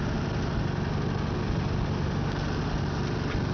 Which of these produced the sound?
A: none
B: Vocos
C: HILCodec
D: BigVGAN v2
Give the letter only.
A